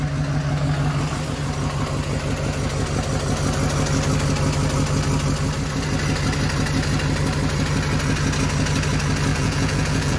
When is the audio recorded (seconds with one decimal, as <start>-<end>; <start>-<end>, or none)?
0.0-9.3